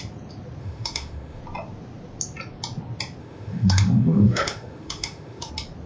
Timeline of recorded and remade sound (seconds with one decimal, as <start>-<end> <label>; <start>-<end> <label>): 0.0-0.6 recorded; 0.6-1.4 remade; 1.4-3.2 recorded; 3.2-5.5 remade; 5.5-5.9 recorded